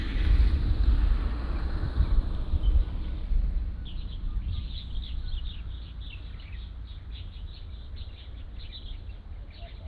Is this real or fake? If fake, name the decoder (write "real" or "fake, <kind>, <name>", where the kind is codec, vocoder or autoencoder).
real